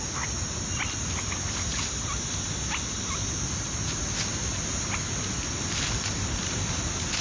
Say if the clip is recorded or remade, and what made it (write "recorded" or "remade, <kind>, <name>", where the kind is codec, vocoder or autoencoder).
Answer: recorded